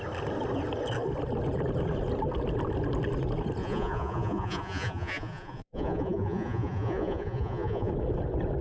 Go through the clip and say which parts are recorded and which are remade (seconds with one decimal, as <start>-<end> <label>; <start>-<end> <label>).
0.0-3.6 recorded; 3.6-7.9 remade; 7.9-8.6 recorded